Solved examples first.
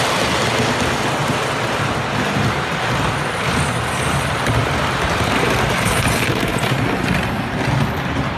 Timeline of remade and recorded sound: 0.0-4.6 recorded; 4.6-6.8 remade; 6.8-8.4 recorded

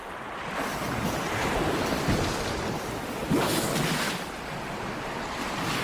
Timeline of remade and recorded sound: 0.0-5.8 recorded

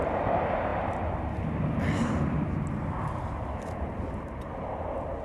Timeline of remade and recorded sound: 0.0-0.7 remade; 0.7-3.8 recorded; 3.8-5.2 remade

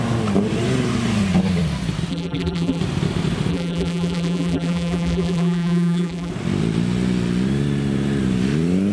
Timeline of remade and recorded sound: 0.0-2.1 recorded; 2.1-2.8 remade; 2.8-3.5 recorded; 3.5-6.3 remade; 6.3-8.9 recorded